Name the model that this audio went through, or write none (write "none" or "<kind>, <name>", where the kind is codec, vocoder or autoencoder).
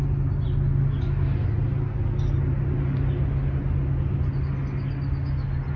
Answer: none